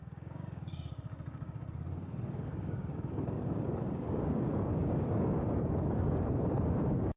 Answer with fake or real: fake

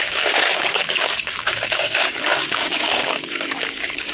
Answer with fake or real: fake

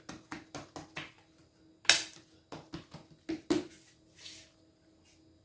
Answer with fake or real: real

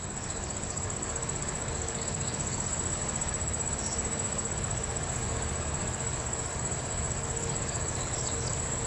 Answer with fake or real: fake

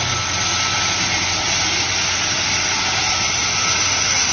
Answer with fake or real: real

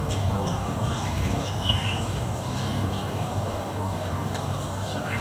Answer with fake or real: fake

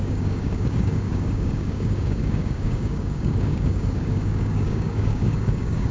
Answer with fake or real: fake